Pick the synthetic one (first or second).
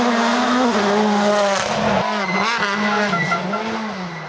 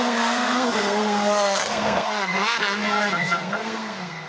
second